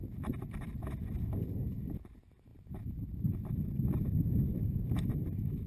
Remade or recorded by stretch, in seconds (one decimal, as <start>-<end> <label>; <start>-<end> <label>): 0.0-5.7 recorded

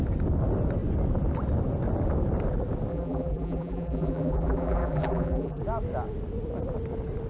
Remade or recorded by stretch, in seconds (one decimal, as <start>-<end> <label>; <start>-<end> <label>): 0.0-2.9 recorded; 2.9-5.6 remade; 5.6-7.3 recorded

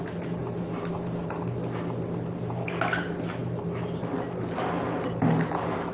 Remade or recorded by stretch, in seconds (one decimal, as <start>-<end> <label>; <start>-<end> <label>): 0.0-0.4 recorded; 0.4-1.3 remade; 1.3-3.4 recorded; 3.4-4.0 remade; 4.0-5.9 recorded

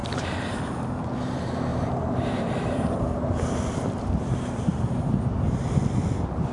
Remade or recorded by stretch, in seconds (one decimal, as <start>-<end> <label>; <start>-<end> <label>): 0.0-0.7 remade; 0.7-1.7 recorded; 1.7-5.1 remade; 5.1-6.5 recorded